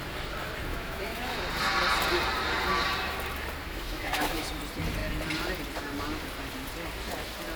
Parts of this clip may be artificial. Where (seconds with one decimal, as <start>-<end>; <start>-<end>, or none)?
0.7-1.4; 3.6-4.5